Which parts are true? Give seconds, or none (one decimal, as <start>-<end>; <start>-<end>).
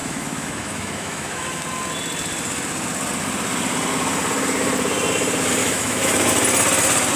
1.6-5.6; 6.3-7.2